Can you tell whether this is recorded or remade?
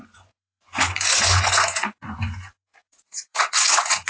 remade